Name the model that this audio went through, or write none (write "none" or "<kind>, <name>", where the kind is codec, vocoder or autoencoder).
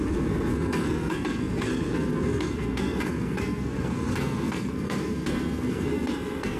codec, SNAC